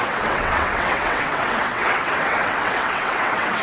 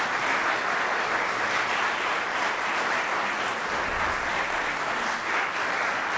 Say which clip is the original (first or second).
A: second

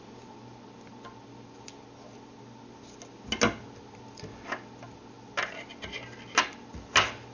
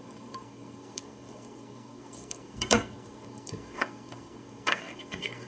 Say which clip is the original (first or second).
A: first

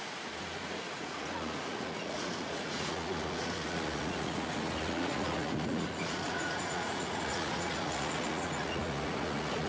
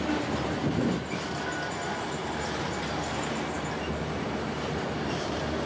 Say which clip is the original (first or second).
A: second